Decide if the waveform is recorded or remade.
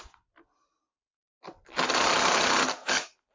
recorded